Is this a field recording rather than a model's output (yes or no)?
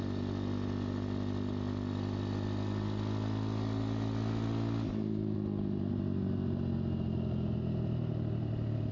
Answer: yes